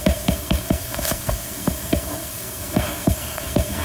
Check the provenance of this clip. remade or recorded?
remade